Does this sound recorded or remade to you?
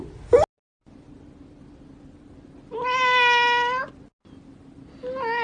recorded